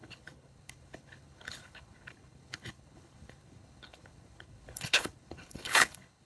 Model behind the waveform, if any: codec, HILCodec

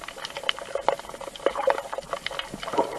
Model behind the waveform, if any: none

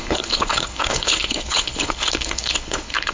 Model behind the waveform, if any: codec, HILCodec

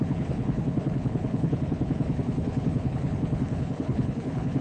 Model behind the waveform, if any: codec, HILCodec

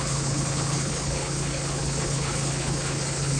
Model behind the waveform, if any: codec, HILCodec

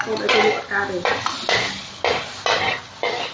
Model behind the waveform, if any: none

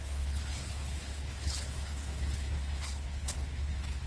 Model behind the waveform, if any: codec, HILCodec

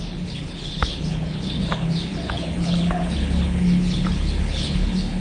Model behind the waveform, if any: codec, HILCodec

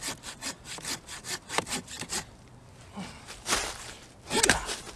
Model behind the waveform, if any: none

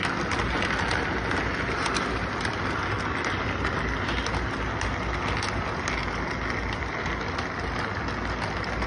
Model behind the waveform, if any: none